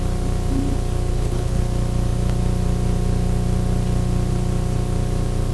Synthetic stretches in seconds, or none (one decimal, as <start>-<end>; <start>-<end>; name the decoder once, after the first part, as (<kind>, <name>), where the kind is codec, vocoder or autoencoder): 1.1-1.6 (codec, HILCodec)